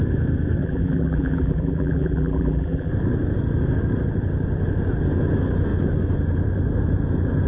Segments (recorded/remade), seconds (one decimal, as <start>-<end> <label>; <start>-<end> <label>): 0.0-0.6 recorded; 0.6-2.9 remade; 2.9-7.5 recorded

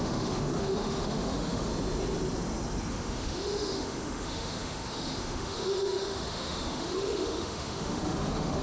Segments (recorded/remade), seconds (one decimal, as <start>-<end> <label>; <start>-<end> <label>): 0.0-1.7 remade; 1.7-2.9 recorded; 2.9-8.6 remade

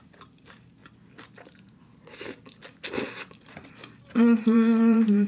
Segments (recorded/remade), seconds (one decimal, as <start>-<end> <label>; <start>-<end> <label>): 0.0-0.8 remade; 0.8-4.0 recorded; 4.0-5.3 remade

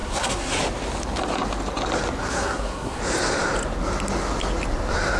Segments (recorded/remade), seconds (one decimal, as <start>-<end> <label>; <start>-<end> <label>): 0.0-0.6 remade; 0.6-2.2 recorded; 2.2-3.0 remade; 3.0-5.2 recorded

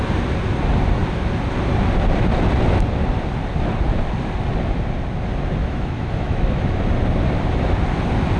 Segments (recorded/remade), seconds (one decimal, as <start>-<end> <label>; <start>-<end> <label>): 0.0-5.6 recorded; 5.6-6.8 remade; 6.8-8.4 recorded